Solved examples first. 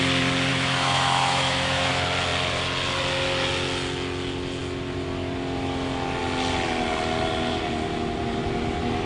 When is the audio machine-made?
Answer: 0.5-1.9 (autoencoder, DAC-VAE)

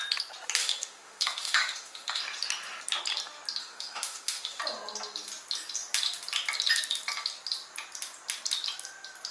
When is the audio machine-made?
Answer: 0.6-2.2 (autoencoder, DAC-VAE); 3.6-4.6

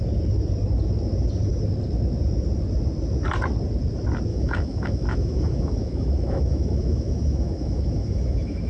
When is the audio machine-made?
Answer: 4.3-8.7 (autoencoder, DAC-VAE)